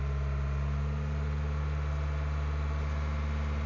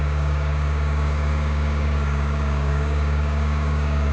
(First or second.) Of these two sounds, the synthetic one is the second